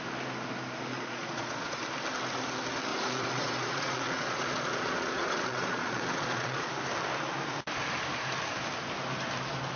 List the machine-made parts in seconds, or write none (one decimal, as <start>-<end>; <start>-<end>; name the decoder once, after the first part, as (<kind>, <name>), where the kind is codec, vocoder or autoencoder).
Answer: 0.9-1.8 (vocoder, Vocos); 2.9-6.7